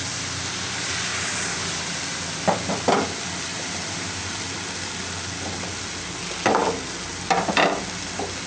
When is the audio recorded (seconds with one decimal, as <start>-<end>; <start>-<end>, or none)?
0.0-1.1; 1.7-3.5; 4.2-8.5